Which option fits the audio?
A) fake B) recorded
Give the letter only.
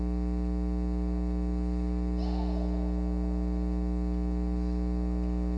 B